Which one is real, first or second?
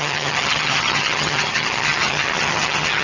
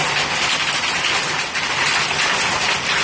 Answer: second